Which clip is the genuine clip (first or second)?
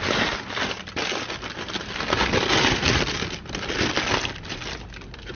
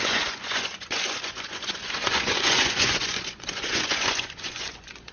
first